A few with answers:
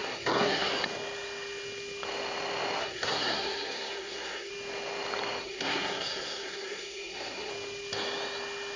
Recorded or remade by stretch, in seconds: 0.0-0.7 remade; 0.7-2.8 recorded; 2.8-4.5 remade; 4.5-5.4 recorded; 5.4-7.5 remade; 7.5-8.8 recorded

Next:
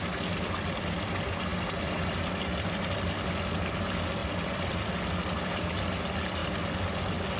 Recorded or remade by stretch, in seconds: 0.0-4.2 recorded; 4.2-4.8 remade; 4.8-7.4 recorded

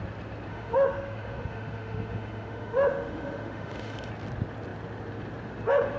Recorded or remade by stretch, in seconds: 0.0-0.5 recorded; 0.5-4.1 remade; 4.1-6.0 recorded

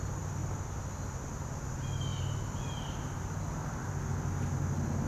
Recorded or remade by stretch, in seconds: 0.0-0.4 recorded; 0.4-1.0 remade; 1.0-2.1 recorded; 2.1-4.0 remade; 4.0-5.1 recorded

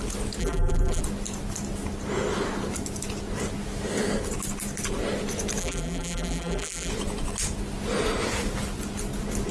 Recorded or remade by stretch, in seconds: 0.0-0.4 recorded; 0.4-1.0 remade; 1.0-5.6 recorded; 5.6-6.9 remade; 6.9-9.5 recorded

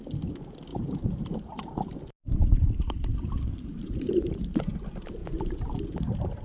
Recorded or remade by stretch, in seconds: 0.0-0.7 recorded; 0.7-1.6 remade; 1.6-3.1 recorded; 3.1-4.4 remade; 4.4-5.2 recorded; 5.2-5.8 remade; 5.8-6.4 recorded

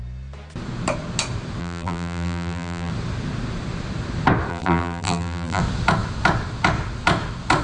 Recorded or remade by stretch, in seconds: 0.0-1.6 recorded; 1.6-2.9 remade; 2.9-4.5 recorded; 4.5-5.6 remade; 5.6-7.6 recorded

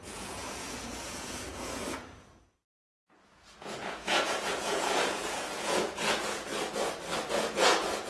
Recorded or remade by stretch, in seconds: 0.0-6.5 remade; 6.5-7.3 recorded; 7.3-8.1 remade